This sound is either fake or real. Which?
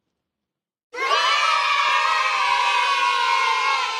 real